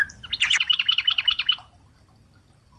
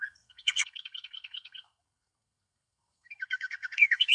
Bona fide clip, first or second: first